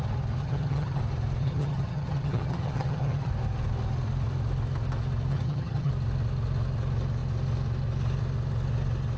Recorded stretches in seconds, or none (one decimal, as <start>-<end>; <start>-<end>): 0.0-0.4; 1.0-1.4; 3.3-5.3; 5.9-9.2